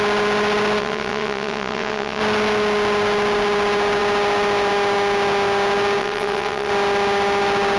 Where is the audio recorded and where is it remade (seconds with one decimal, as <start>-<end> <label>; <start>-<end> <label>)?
0.0-0.8 recorded; 0.8-2.2 remade; 2.2-6.0 recorded; 6.0-6.7 remade; 6.7-7.8 recorded